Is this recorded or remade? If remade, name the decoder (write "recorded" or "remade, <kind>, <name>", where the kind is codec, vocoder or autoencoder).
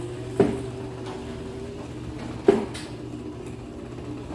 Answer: recorded